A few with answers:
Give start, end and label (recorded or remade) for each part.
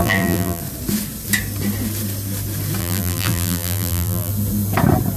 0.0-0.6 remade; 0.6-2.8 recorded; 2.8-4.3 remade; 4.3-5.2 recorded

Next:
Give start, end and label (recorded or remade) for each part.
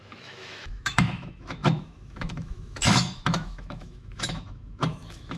0.0-5.4 remade